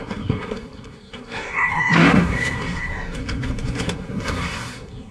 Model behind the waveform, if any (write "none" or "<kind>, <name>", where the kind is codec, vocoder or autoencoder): codec, SNAC